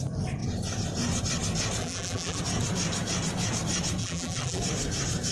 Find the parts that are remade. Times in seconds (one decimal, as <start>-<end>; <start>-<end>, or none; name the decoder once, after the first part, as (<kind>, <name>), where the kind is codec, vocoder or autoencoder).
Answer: 1.8-2.4 (vocoder, BigVGAN v2); 4.0-4.6